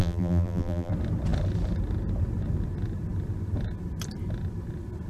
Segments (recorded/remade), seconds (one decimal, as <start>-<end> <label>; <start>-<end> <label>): 0.0-0.9 remade; 0.9-5.1 recorded